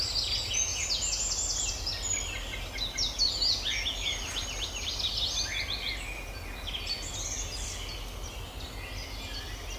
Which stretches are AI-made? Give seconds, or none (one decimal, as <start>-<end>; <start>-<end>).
none